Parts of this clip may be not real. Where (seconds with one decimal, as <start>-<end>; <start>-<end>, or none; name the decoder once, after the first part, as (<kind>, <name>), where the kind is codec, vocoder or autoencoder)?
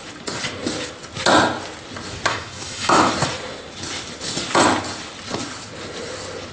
2.3-3.1 (autoencoder, DAC-VAE)